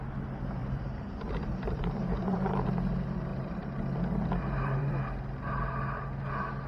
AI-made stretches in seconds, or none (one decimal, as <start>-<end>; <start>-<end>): 0.6-2.7; 3.3-5.0